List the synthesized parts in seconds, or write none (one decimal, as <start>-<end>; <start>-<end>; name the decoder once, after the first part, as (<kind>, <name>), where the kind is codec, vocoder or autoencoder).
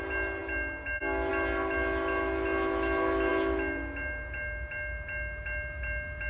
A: none